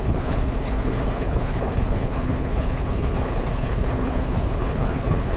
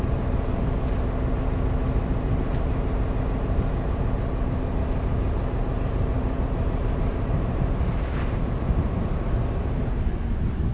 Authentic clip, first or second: second